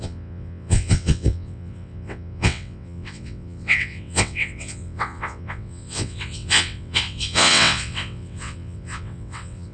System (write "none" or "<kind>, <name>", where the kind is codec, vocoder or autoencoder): vocoder, WaveNeXt